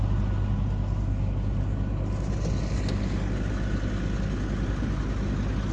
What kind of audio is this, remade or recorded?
recorded